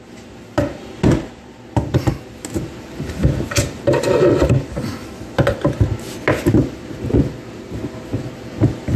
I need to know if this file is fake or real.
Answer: real